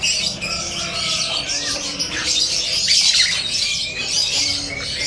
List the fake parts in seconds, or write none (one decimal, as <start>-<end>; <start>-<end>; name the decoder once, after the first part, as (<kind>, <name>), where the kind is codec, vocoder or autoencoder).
1.7-3.1 (vocoder, BigVGAN v2); 3.8-4.4